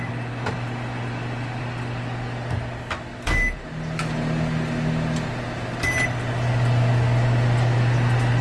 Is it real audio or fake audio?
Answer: real